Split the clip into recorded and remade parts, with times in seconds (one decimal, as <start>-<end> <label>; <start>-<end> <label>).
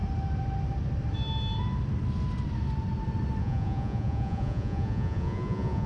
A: 0.0-3.4 recorded; 3.4-5.9 remade